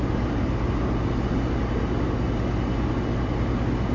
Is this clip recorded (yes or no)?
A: yes